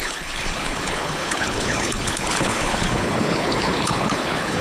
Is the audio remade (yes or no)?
yes